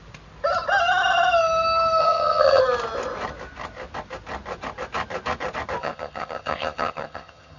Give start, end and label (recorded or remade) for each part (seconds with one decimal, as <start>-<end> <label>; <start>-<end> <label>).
0.0-2.0 recorded; 2.0-2.6 remade; 2.6-5.8 recorded; 5.8-7.6 remade